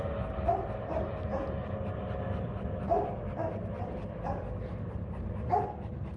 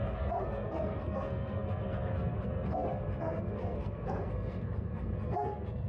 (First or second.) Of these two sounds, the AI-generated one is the second